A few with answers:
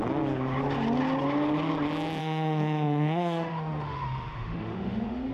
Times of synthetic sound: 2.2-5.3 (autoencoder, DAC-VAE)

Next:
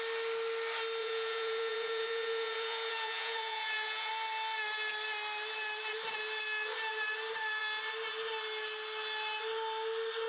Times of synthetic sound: 1.0-4.1 (vocoder, Vocos)

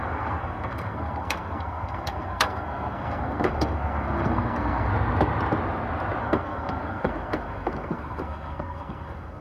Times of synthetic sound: 0.0-4.9 (codec, SNAC); 6.2-9.4

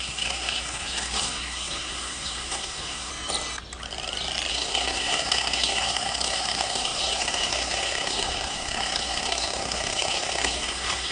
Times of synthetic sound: 0.0-3.1 (codec, SNAC); 4.5-11.1